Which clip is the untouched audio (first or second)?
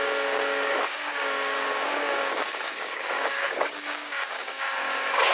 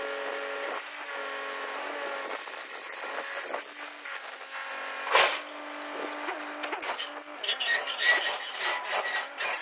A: second